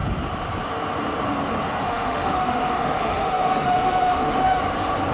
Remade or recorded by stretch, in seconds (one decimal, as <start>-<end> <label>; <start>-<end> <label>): 0.0-1.9 recorded; 1.9-4.6 remade; 4.6-5.1 recorded